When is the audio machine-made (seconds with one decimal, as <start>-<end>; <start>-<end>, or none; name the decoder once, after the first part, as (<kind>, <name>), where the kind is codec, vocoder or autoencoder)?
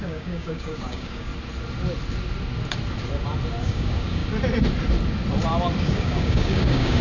0.0-1.3 (codec, DAC); 3.6-4.2; 5.8-7.0